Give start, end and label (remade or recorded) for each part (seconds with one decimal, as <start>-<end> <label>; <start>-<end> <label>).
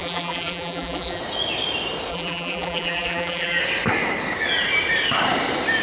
0.0-1.2 remade; 1.2-2.1 recorded; 2.1-3.6 remade; 3.6-5.8 recorded